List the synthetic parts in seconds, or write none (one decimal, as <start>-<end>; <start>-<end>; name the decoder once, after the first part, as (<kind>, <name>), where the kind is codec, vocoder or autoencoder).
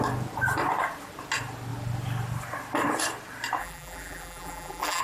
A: 3.6-5.0 (vocoder, BigVGAN v2)